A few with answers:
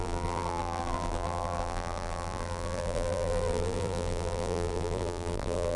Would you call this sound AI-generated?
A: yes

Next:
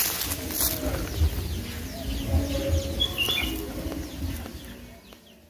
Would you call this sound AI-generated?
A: no